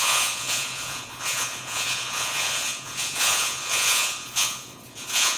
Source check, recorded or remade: remade